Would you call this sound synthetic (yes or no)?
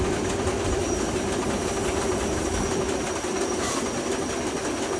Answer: no